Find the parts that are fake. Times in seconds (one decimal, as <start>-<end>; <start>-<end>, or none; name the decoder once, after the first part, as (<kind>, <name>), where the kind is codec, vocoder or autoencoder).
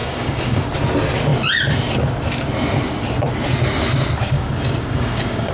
0.0-0.7 (codec, DAC); 4.2-5.5